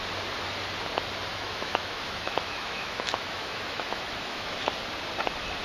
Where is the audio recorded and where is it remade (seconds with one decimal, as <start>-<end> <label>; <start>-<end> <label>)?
0.0-1.3 recorded; 1.3-4.7 remade; 4.7-5.6 recorded